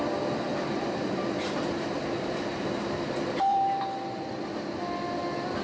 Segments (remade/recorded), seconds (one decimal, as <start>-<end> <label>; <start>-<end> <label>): 0.0-0.5 recorded; 0.5-3.8 remade; 3.8-5.6 recorded